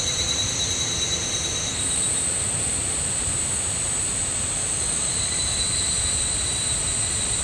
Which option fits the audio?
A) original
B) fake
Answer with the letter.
B